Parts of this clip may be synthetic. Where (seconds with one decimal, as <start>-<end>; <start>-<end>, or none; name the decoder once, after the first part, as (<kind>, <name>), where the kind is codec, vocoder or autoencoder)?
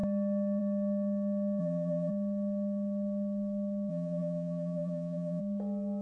1.6-2.1 (vocoder, Vocos); 3.9-5.4